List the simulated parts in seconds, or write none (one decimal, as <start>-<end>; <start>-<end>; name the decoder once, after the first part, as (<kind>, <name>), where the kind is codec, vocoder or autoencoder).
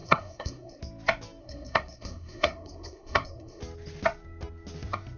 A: 0.0-0.8 (codec, SNAC); 1.4-3.6